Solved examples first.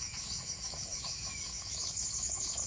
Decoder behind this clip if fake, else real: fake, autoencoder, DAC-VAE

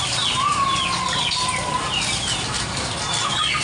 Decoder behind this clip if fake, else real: real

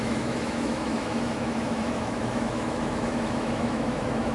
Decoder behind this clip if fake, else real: fake, autoencoder, DAC-VAE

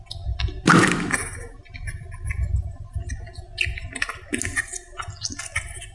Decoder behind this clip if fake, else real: real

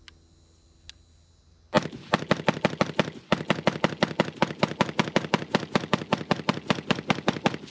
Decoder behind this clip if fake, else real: real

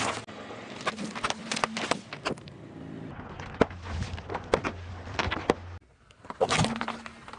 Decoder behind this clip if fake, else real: real